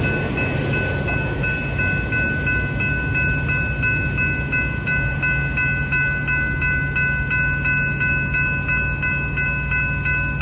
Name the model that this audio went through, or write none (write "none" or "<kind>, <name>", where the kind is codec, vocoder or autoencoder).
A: none